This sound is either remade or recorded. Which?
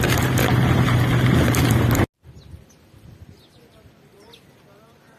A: recorded